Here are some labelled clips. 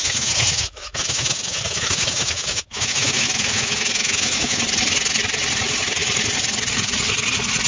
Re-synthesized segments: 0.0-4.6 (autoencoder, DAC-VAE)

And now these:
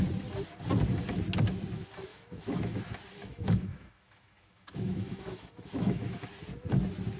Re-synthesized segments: 2.1-2.8 (autoencoder, DAC-VAE); 3.2-6.3

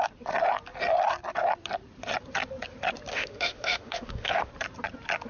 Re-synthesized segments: 3.1-4.5 (autoencoder, DAC-VAE)

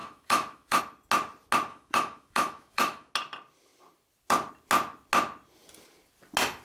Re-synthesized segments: 0.0-0.8 (autoencoder, DAC-VAE); 1.7-3.1

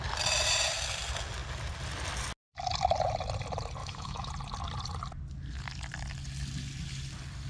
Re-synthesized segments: 3.8-4.3 (autoencoder, DAC-VAE)

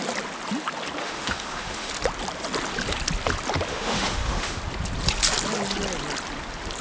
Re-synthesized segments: 1.0-1.9 (autoencoder, DAC-VAE); 3.7-4.6

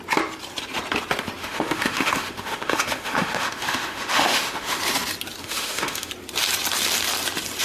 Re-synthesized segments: 1.4-4.8 (autoencoder, DAC-VAE); 5.4-6.1